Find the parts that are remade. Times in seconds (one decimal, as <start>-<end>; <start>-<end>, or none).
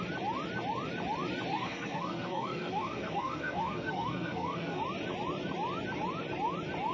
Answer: 1.5-4.8